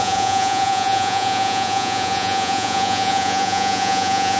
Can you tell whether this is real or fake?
fake